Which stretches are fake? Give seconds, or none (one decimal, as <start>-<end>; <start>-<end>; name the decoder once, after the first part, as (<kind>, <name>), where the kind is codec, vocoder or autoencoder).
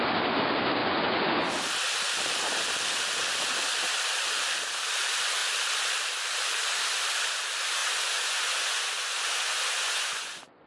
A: 0.8-1.5 (vocoder, Vocos); 7.8-10.7